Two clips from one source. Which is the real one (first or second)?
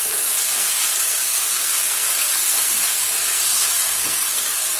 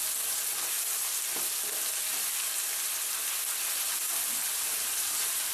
second